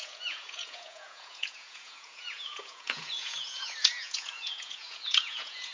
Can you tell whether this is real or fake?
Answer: fake